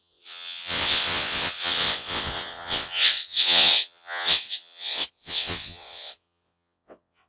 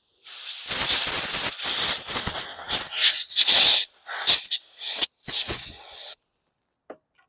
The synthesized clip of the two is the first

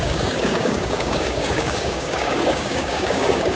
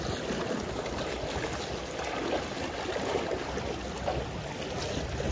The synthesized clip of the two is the first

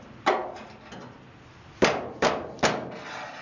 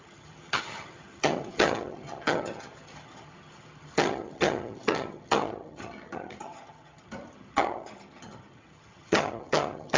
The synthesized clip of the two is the second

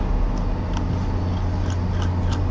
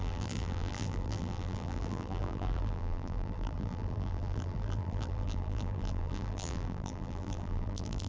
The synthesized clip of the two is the second